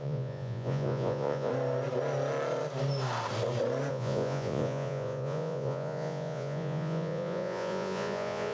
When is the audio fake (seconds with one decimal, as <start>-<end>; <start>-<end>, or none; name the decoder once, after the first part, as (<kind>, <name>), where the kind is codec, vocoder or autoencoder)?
0.0-1.5 (vocoder, Vocos); 3.9-8.5